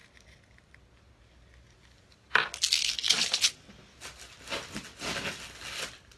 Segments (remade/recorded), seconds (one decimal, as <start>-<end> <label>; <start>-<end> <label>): 0.0-6.2 recorded